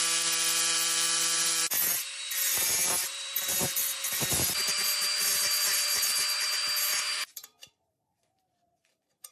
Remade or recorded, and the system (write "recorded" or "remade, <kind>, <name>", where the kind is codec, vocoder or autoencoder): remade, vocoder, BigVGAN v2